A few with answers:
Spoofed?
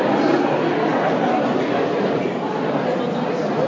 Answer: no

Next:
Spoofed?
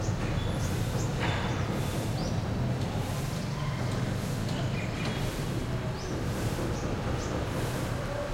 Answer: no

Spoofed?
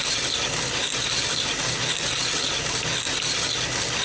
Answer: no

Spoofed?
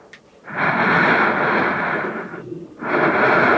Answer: no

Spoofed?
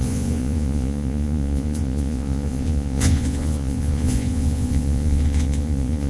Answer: yes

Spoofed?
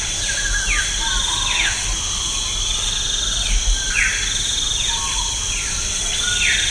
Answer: no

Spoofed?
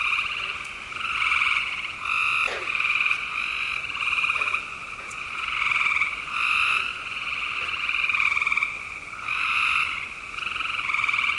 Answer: yes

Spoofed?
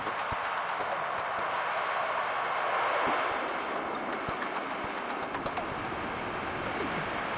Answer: no